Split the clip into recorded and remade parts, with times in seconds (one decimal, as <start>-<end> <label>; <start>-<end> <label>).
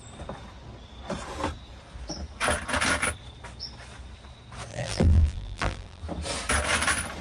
0.0-4.7 recorded; 4.7-6.0 remade; 6.0-7.2 recorded